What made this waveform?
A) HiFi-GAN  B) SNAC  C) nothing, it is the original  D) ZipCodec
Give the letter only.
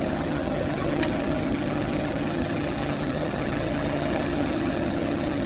A